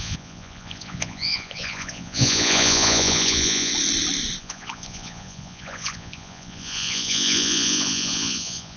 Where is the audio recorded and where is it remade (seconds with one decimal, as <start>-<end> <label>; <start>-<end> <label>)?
0.0-3.7 remade; 3.7-4.4 recorded; 4.4-8.8 remade